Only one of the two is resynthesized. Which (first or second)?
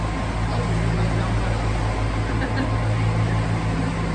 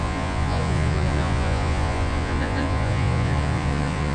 second